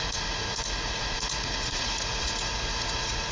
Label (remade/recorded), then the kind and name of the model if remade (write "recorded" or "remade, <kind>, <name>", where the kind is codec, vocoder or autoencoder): remade, vocoder, Vocos